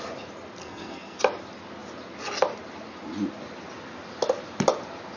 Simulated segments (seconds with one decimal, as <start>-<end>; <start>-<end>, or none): 0.6-1.2